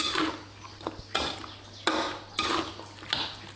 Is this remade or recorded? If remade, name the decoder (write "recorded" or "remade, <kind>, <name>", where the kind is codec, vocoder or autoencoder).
recorded